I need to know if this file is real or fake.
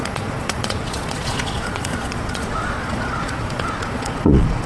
fake